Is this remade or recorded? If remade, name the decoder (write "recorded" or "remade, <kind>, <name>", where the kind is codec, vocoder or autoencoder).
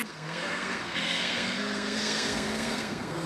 remade, codec, SNAC